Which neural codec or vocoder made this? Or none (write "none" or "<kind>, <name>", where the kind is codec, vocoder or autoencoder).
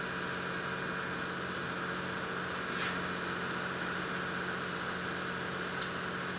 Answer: none